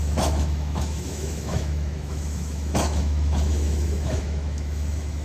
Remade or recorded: remade